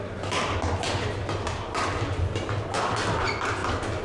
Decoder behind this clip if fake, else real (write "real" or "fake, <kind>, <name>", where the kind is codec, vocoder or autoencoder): real